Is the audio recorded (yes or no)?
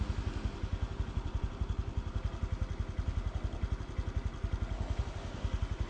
yes